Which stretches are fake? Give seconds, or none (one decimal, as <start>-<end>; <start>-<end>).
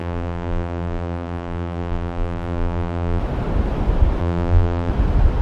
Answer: 0.0-3.2; 4.2-4.9